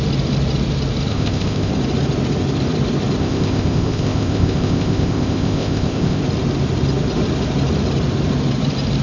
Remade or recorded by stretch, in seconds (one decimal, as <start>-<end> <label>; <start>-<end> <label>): 0.0-1.1 recorded; 1.1-1.7 remade; 1.7-3.2 recorded; 3.2-6.2 remade; 6.2-9.0 recorded